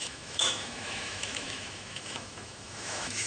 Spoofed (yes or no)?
yes